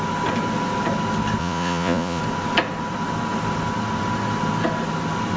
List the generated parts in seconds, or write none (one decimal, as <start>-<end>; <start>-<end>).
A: 1.4-2.2